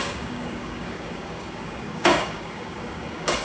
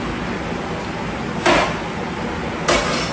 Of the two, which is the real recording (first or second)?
second